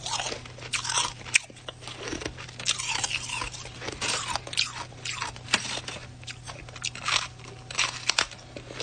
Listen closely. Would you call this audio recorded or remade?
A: recorded